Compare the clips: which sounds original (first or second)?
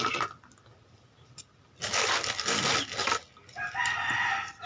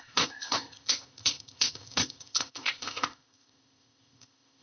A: first